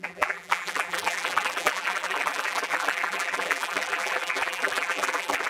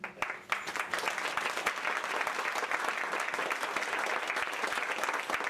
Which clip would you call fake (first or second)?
first